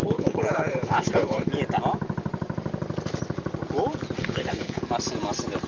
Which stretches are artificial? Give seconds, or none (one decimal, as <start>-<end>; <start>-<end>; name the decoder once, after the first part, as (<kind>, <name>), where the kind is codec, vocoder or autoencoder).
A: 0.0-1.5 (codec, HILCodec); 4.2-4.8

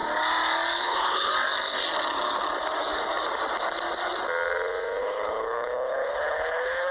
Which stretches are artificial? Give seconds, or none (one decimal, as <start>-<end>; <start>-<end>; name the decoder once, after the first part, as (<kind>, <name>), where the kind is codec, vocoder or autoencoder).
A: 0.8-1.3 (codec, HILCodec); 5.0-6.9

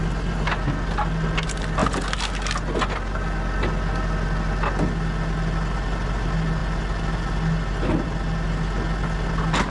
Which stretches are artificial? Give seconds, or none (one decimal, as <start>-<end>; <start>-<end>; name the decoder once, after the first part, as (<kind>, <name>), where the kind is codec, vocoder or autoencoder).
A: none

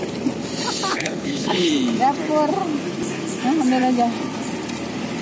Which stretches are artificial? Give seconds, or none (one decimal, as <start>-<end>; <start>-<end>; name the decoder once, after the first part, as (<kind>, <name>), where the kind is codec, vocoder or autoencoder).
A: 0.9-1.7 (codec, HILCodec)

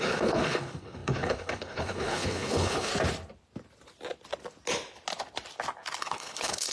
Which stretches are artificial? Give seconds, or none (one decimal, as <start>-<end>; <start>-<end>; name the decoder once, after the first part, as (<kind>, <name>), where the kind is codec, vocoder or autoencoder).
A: 0.0-2.9 (codec, HILCodec); 6.0-6.7